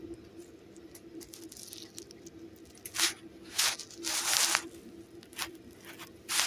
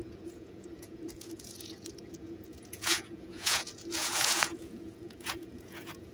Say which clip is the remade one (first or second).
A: second